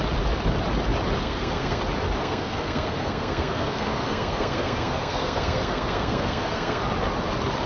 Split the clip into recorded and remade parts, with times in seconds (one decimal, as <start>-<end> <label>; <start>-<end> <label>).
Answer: 0.0-1.2 recorded; 1.2-1.8 remade; 1.8-2.2 recorded; 2.2-6.8 remade; 6.8-7.7 recorded